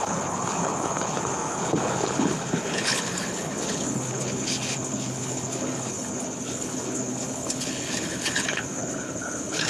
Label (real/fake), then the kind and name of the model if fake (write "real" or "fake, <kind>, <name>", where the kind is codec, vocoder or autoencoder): fake, codec, HILCodec